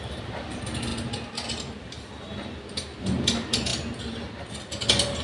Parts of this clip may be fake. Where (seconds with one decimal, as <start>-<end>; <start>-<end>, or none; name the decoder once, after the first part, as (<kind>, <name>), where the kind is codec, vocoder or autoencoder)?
none